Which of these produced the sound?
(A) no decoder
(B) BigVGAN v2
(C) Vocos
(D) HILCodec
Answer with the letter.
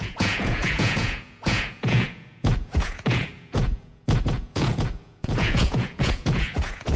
C